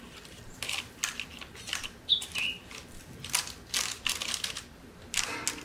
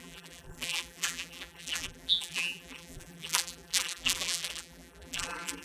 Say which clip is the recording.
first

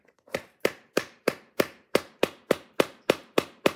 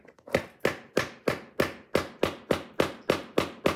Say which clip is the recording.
second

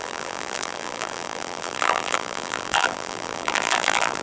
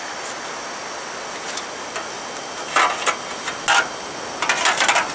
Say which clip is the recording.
second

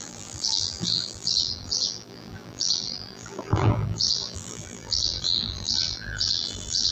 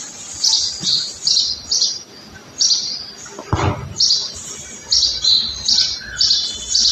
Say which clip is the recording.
second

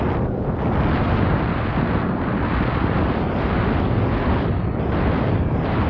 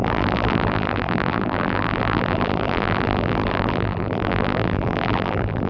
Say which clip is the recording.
first